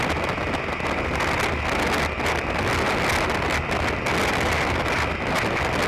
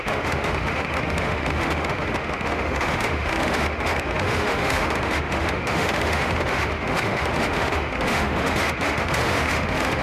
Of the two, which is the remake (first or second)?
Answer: second